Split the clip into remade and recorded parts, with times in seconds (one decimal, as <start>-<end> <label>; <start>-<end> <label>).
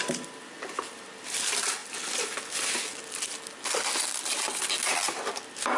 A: 0.0-5.8 recorded